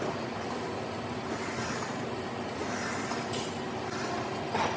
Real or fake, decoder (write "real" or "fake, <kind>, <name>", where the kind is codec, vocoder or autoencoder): real